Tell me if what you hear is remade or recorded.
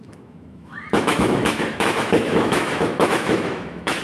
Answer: remade